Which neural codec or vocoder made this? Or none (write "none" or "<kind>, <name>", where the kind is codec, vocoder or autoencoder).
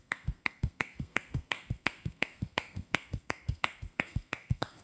codec, SNAC